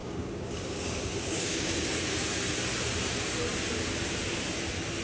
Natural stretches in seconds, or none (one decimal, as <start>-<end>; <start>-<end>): 1.8-5.0